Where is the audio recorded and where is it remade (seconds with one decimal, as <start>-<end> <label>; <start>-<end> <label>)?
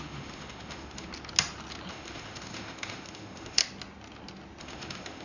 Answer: 0.0-1.1 remade; 1.1-1.9 recorded; 1.9-3.6 remade; 3.6-4.6 recorded; 4.6-5.2 remade